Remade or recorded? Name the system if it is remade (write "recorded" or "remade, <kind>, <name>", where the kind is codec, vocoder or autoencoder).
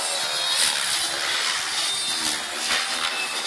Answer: recorded